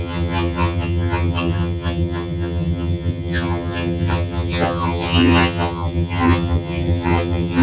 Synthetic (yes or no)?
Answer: yes